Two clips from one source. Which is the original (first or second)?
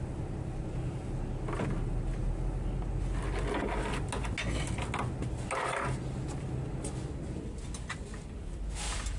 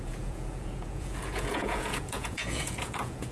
first